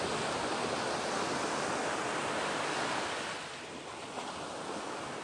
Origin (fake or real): real